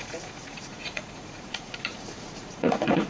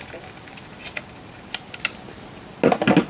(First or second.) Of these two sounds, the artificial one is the first